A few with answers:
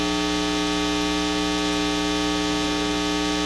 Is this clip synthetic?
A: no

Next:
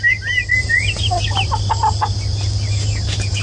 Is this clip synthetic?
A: no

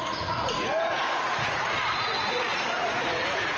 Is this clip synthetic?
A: yes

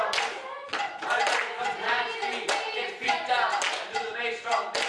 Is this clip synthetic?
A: no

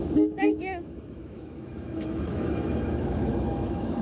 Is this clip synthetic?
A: yes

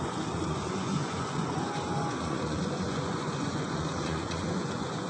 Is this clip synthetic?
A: yes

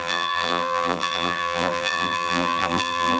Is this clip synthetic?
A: yes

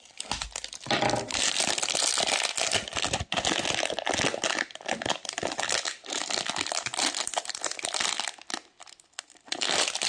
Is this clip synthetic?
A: no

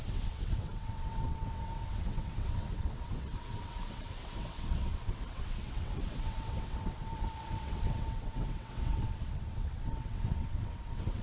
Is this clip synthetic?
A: yes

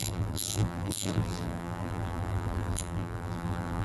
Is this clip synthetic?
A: yes